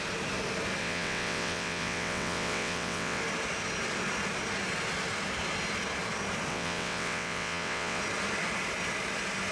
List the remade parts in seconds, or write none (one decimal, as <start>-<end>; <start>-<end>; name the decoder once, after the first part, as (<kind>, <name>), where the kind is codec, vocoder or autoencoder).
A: 0.8-3.2 (vocoder, WaveNeXt); 6.5-8.0